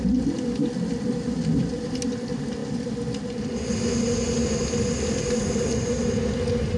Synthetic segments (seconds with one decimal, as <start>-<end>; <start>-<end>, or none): none